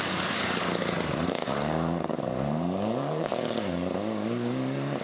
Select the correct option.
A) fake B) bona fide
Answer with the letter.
A